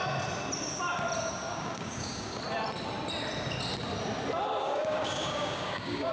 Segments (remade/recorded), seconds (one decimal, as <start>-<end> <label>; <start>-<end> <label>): 0.0-1.4 recorded; 1.4-2.4 remade; 2.4-4.6 recorded; 4.6-6.1 remade